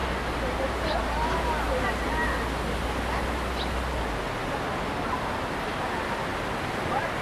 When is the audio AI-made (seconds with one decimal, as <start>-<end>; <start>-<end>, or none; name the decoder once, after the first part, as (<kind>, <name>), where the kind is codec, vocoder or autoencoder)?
none